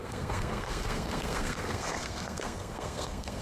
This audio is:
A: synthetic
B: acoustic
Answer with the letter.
A